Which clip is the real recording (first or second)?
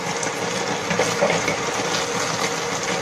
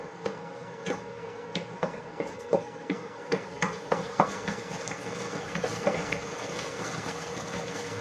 first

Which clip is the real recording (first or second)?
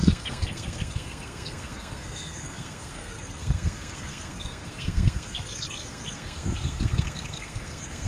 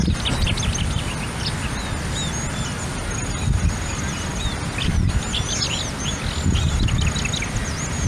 second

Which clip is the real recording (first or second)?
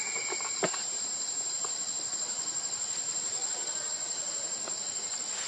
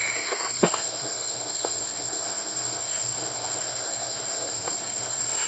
first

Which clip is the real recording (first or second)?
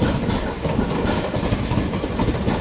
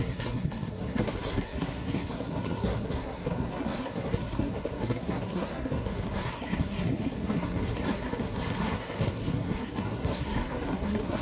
first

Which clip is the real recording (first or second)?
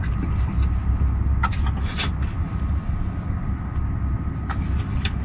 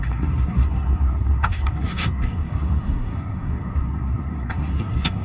first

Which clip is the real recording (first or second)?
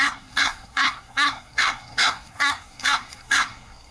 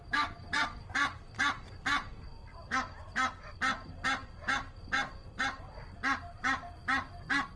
second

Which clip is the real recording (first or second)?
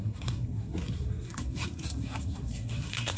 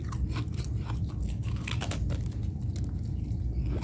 second